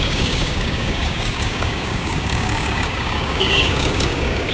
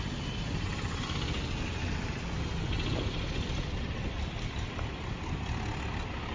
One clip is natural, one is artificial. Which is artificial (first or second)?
first